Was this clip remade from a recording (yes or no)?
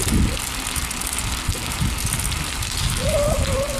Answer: no